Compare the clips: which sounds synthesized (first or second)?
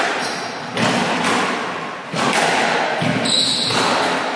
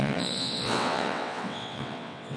second